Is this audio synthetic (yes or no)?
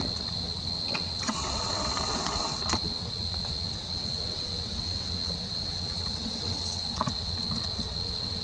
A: yes